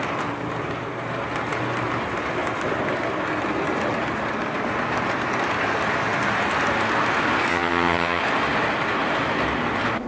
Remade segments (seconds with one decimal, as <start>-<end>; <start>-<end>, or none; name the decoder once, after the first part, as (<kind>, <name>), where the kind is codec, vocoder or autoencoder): 7.5-8.2 (vocoder, HiFi-GAN)